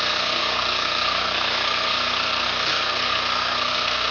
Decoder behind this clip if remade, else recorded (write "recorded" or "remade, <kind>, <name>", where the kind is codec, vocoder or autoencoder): remade, codec, SNAC